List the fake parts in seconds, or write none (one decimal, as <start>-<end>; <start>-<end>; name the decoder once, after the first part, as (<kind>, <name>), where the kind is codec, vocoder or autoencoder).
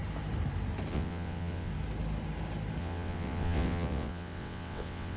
0.9-1.7 (vocoder, WaveNeXt); 2.8-5.2